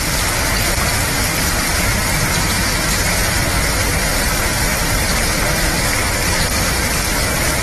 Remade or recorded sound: recorded